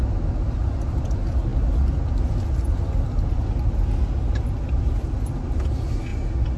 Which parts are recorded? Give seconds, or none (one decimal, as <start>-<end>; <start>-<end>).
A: 0.0-6.6